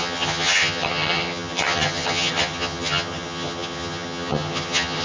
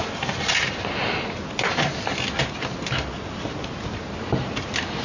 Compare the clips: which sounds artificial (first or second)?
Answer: first